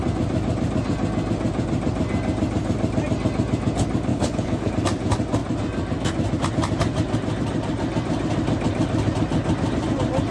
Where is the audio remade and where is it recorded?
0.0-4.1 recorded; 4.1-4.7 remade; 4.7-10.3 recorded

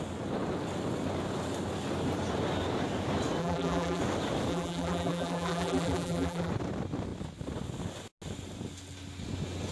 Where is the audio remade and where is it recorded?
0.0-3.4 recorded; 3.4-4.0 remade; 4.0-4.5 recorded; 4.5-6.5 remade; 6.5-9.7 recorded

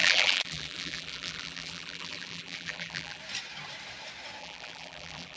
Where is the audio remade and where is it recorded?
0.0-3.2 remade; 3.2-4.4 recorded; 4.4-5.4 remade

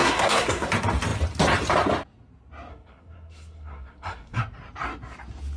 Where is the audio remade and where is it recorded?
0.0-0.7 remade; 0.7-2.7 recorded; 2.7-4.4 remade; 4.4-5.6 recorded

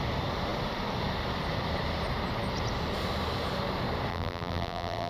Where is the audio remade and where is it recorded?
0.0-4.1 recorded; 4.1-5.1 remade

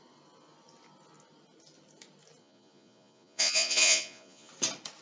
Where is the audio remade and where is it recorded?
0.0-2.4 recorded; 2.4-4.5 remade; 4.5-5.0 recorded

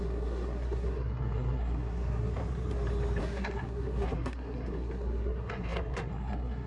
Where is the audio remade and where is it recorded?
0.0-2.4 remade; 2.4-3.2 recorded; 3.2-6.7 remade